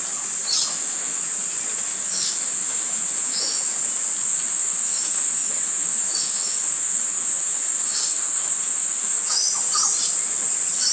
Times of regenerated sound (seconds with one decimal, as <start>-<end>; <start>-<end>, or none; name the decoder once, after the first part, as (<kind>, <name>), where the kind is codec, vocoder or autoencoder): 0.7-1.2 (autoencoder, DAC-VAE); 1.9-3.8; 4.3-9.5